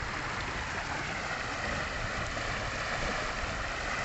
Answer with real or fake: real